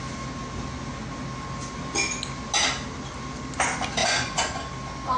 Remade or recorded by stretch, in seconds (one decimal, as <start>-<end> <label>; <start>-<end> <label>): 0.0-4.0 recorded; 4.0-4.6 remade; 4.6-5.2 recorded

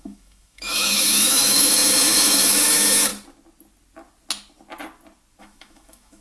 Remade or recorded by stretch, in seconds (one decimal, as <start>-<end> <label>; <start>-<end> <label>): 0.0-3.1 remade; 3.1-5.4 recorded; 5.4-6.2 remade

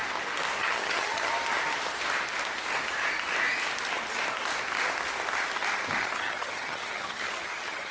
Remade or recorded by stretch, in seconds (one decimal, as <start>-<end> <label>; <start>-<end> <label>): 0.0-0.6 recorded; 0.6-1.3 remade; 1.3-6.0 recorded; 6.0-7.9 remade